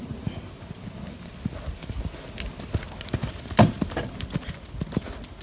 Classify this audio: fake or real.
real